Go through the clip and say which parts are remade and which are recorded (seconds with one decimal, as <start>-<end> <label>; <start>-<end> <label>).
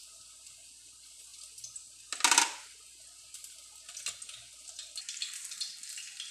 0.0-6.3 recorded